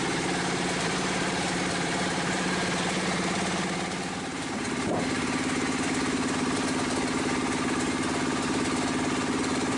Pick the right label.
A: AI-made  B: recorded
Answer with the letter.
A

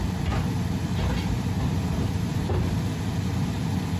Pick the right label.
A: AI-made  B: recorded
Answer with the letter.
A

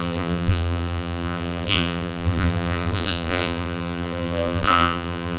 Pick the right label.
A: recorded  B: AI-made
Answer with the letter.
B